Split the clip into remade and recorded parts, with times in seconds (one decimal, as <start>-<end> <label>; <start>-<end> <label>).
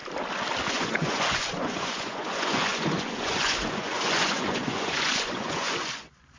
0.0-0.7 recorded; 0.7-6.4 remade